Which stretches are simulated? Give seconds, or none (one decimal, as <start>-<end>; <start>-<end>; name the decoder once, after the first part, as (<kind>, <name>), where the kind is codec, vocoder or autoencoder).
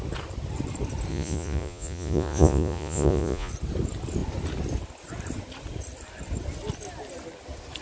1.1-3.5 (vocoder, Vocos)